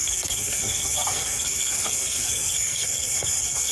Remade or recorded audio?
remade